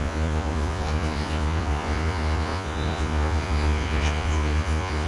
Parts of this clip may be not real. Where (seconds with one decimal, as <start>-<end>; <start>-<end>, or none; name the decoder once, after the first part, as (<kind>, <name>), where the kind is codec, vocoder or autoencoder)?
0.0-5.1 (vocoder, Vocos)